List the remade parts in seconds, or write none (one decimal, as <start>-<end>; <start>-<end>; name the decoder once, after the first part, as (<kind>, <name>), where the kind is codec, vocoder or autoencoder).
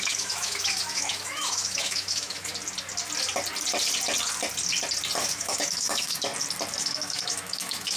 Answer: 0.0-2.5 (autoencoder, DAC-VAE); 5.2-6.3; 6.8-8.0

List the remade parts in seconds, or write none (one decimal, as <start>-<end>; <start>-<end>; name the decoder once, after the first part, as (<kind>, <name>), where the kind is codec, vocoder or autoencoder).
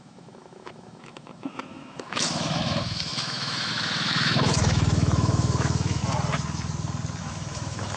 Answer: 0.0-6.0 (autoencoder, DAC-VAE); 7.2-8.0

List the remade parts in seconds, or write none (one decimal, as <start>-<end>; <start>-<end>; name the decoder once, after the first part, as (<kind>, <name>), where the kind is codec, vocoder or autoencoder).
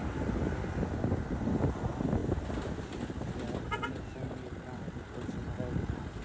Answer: none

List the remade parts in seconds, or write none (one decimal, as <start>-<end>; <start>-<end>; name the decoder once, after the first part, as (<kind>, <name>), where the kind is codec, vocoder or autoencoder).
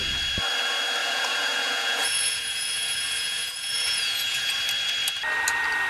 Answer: 1.0-4.5 (vocoder, Vocos)